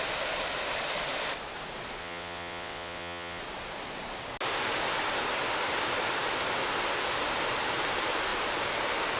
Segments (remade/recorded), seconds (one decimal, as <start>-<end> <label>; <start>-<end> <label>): 0.0-2.0 recorded; 2.0-3.4 remade; 3.4-9.2 recorded